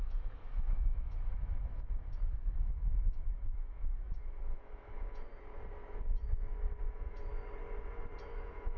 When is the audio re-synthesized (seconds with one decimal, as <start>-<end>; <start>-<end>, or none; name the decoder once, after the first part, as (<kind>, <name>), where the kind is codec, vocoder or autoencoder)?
0.0-5.3 (autoencoder, DAC-VAE); 6.8-7.3; 8.2-8.8